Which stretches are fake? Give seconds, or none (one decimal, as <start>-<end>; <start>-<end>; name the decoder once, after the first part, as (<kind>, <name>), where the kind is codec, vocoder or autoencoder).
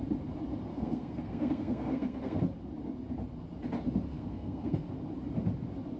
0.7-2.4 (codec, SNAC); 4.1-4.9